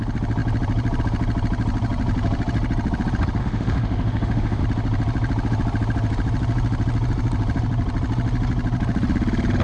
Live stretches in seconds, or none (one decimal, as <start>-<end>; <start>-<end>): 0.0-3.4; 4.6-9.6